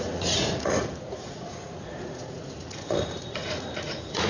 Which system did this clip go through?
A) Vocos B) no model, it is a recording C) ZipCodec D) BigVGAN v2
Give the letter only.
A